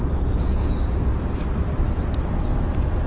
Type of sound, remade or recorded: recorded